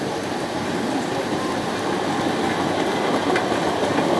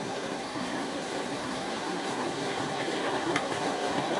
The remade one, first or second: second